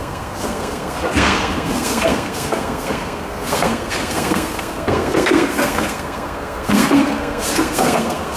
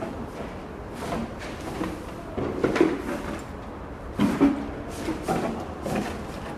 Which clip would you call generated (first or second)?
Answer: first